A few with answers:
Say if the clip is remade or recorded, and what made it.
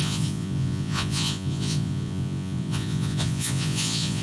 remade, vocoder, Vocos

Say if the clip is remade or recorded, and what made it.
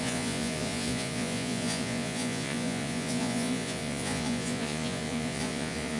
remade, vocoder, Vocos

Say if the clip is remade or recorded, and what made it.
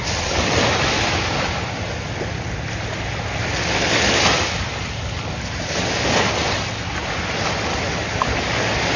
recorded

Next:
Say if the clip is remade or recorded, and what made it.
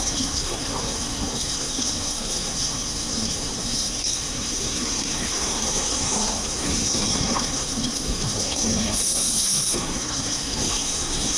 remade, codec, SNAC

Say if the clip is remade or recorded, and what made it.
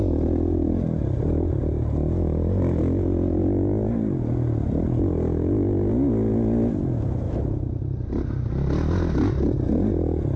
recorded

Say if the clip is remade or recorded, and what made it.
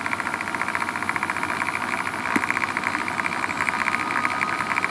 recorded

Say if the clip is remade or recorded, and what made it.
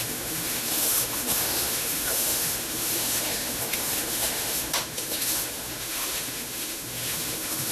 remade, autoencoder, DAC-VAE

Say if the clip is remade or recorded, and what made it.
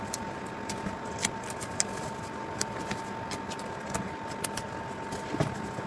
recorded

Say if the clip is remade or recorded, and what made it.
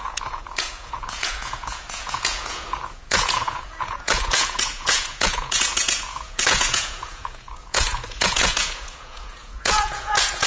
remade, vocoder, Vocos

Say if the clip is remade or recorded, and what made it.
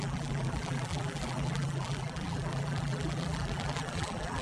remade, vocoder, BigVGAN v2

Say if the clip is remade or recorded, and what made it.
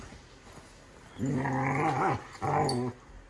recorded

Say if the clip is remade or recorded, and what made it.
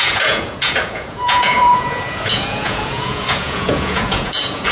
remade, vocoder, Vocos